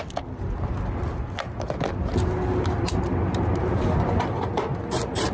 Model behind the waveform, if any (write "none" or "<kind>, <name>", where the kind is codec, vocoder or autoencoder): none